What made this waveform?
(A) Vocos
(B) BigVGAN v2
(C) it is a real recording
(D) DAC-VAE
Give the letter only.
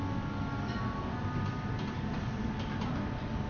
C